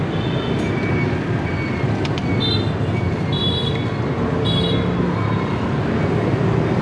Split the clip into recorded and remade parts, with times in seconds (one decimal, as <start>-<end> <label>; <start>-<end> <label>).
0.0-6.8 recorded